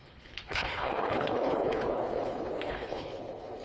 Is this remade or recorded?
remade